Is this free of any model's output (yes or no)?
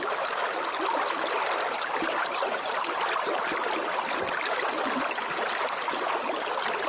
yes